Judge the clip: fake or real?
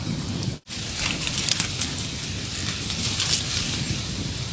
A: real